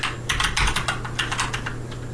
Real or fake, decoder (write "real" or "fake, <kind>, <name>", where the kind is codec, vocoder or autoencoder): real